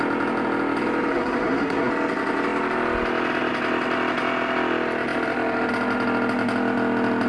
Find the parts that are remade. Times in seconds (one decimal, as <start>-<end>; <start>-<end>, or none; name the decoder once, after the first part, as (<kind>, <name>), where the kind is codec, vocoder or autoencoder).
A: 1.1-1.9 (codec, SNAC)